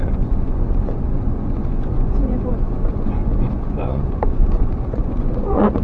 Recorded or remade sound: remade